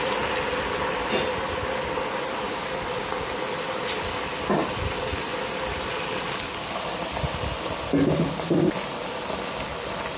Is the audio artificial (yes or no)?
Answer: no